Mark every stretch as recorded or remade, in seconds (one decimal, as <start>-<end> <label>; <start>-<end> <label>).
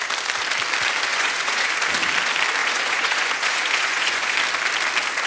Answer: 0.0-1.1 recorded; 1.1-1.7 remade; 1.7-2.6 recorded; 2.6-4.4 remade; 4.4-5.3 recorded